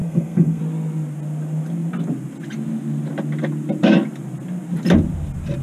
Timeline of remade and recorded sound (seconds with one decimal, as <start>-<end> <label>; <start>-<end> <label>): 0.0-0.6 remade; 0.6-5.6 recorded